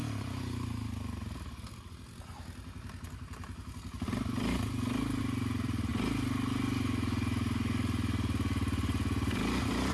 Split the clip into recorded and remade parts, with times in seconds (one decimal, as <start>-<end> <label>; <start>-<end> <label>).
0.0-5.2 recorded; 5.2-5.9 remade; 5.9-9.9 recorded